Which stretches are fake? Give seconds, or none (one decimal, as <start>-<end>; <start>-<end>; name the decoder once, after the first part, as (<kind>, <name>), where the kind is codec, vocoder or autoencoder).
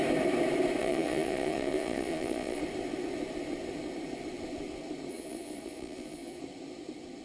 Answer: 0.8-2.6 (vocoder, Vocos); 5.1-6.4